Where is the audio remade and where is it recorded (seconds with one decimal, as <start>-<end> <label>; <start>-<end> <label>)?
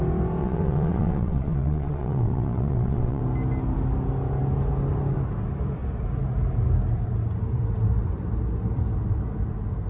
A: 0.0-0.4 recorded; 0.4-3.2 remade; 3.2-9.9 recorded